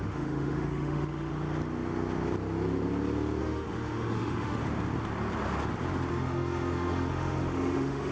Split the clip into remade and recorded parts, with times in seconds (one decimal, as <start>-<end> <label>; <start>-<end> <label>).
0.0-1.3 remade; 1.3-3.4 recorded; 3.4-4.6 remade; 4.6-6.1 recorded; 6.1-8.1 remade